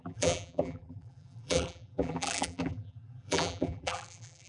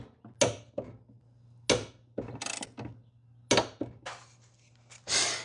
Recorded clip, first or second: second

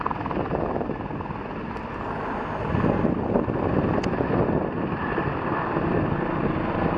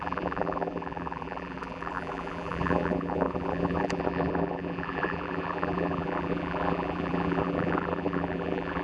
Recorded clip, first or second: first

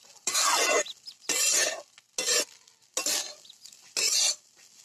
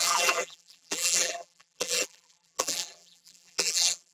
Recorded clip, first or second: first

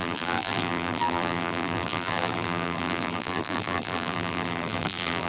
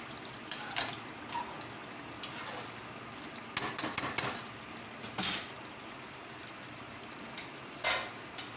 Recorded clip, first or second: second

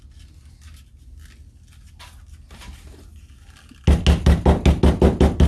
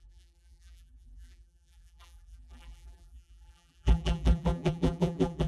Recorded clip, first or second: first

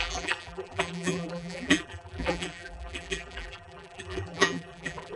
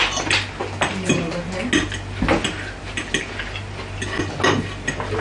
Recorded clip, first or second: second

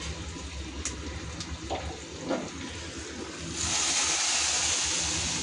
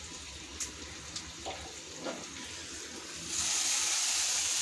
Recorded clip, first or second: first